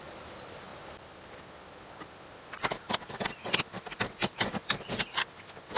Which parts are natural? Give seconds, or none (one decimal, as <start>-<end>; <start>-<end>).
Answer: 0.0-5.8